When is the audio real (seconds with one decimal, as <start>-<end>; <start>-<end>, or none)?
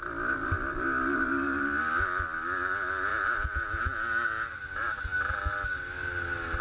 0.0-6.6